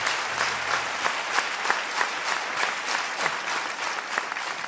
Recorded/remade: recorded